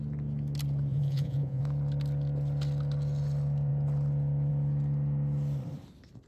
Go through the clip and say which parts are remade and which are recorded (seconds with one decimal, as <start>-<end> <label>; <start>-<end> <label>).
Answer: 0.0-0.9 recorded; 0.9-1.6 remade; 1.6-6.3 recorded